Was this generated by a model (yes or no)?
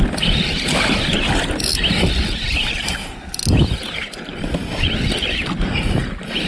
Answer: no